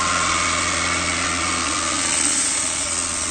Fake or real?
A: fake